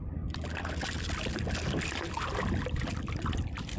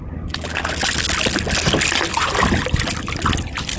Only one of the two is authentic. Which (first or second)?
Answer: second